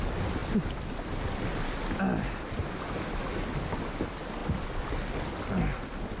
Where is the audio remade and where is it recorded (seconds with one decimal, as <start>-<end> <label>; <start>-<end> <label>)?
0.0-4.4 recorded; 4.4-5.1 remade; 5.1-6.2 recorded